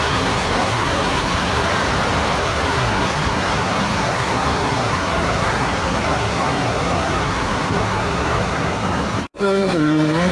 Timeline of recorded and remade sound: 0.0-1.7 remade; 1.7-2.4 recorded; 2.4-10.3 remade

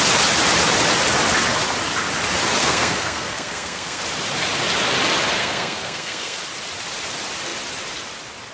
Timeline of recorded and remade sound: 0.0-2.6 recorded; 2.6-4.0 remade; 4.0-5.4 recorded; 5.4-6.4 remade; 6.4-8.5 recorded

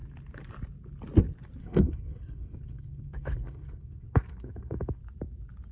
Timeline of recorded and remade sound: 0.0-1.6 recorded; 1.6-5.0 remade; 5.0-5.7 recorded

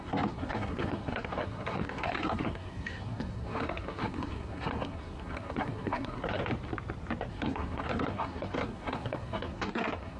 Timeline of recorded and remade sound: 0.0-6.4 remade; 6.4-7.3 recorded; 7.3-10.2 remade